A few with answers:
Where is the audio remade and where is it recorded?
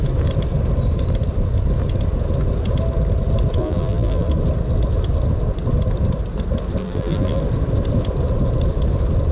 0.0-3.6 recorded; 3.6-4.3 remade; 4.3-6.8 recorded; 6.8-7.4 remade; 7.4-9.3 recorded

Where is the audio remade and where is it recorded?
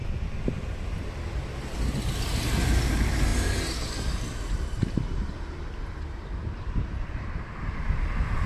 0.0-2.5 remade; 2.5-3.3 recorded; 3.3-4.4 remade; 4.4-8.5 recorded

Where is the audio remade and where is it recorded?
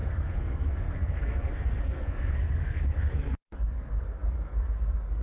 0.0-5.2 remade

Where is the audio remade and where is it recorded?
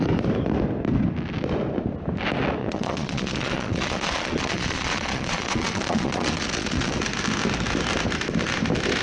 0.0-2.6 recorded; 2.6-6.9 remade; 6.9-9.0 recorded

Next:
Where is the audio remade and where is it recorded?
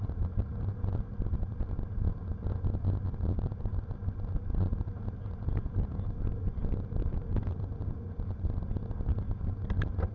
0.0-10.1 recorded